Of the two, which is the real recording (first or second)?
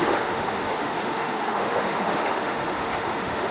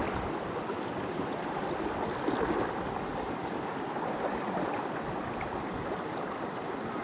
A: second